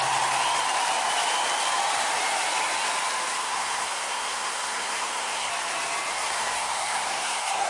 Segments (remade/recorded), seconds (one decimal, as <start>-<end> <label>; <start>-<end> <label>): 0.0-3.4 recorded; 3.4-5.5 remade; 5.5-6.1 recorded; 6.1-7.7 remade